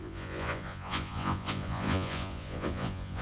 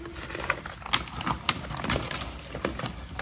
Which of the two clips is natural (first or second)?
second